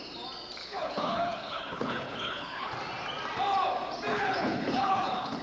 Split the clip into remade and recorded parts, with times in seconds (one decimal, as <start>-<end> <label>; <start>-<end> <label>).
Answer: 0.0-0.6 recorded; 0.6-2.7 remade; 2.7-4.1 recorded; 4.1-5.4 remade